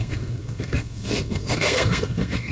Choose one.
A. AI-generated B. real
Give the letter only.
A